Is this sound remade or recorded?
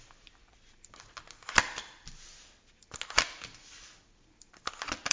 recorded